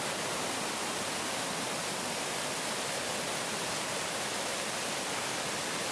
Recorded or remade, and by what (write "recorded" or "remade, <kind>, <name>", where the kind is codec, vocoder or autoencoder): recorded